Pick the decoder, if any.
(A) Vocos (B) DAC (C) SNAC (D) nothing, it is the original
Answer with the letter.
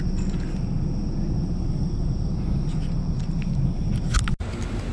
D